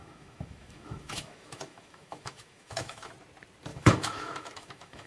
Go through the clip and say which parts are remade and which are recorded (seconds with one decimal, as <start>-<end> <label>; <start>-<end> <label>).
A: 0.0-3.1 remade; 3.1-3.7 recorded; 3.7-5.1 remade